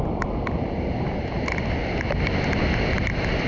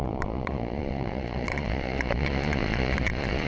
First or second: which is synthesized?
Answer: second